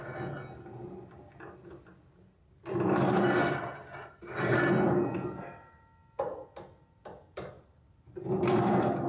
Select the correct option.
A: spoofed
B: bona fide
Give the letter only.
B